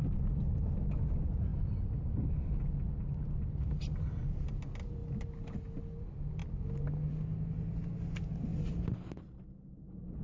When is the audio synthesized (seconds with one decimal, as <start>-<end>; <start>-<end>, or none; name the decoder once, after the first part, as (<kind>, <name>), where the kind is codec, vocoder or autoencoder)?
none